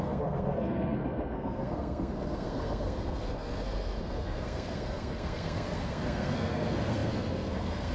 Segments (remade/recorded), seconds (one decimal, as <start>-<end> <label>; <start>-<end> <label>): 0.0-7.9 remade